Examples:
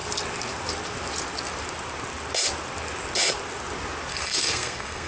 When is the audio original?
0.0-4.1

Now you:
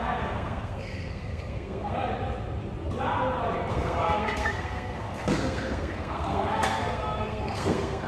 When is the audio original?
2.1-3.7

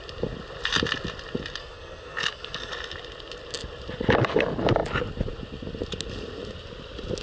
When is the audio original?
0.0-1.6; 2.7-7.2